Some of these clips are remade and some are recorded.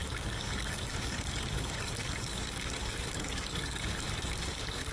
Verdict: remade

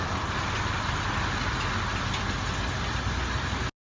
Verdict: recorded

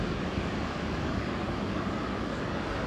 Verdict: remade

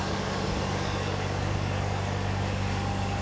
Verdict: remade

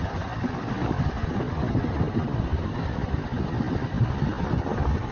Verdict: recorded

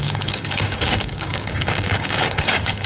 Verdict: remade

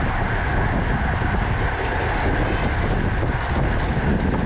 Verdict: recorded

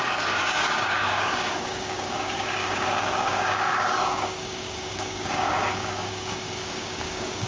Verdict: remade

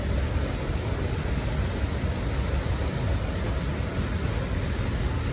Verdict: recorded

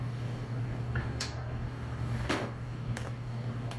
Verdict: remade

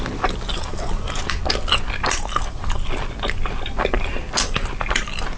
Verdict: recorded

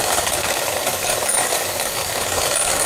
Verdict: remade